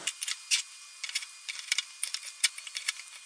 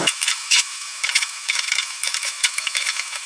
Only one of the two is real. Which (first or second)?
first